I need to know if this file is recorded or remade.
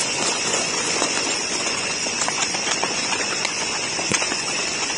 remade